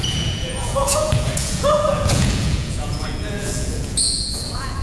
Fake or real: fake